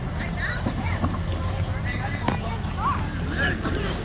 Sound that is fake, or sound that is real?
real